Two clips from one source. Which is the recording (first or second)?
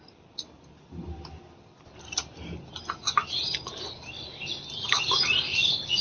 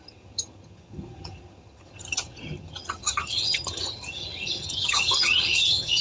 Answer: first